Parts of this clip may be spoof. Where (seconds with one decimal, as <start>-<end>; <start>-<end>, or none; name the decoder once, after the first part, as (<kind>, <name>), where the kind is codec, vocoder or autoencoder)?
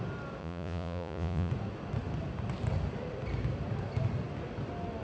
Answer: 0.4-1.5 (vocoder, Vocos)